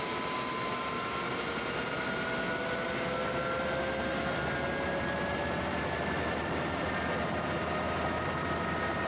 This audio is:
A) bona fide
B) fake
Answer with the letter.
A